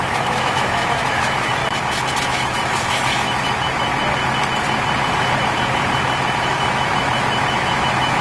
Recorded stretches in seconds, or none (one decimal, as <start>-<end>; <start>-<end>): 1.6-2.2; 3.9-6.4